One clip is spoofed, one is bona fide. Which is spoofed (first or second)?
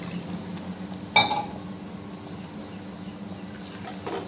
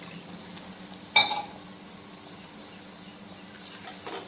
second